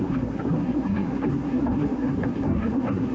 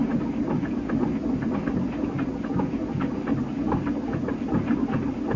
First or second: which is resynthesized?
first